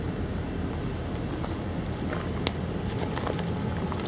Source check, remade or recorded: recorded